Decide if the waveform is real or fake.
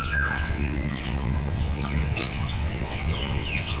fake